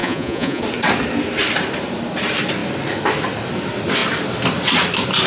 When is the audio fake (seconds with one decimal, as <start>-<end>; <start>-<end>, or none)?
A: 0.0-0.6

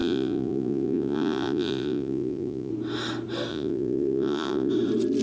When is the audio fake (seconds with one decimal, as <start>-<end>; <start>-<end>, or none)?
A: 0.0-2.7; 3.5-4.7

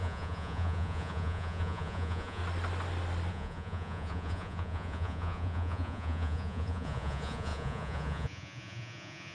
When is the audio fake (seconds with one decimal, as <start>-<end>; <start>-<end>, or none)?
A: 0.0-2.4; 3.3-9.3

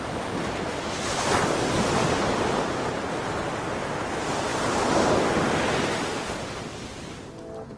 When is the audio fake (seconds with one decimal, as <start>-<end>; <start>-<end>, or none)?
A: none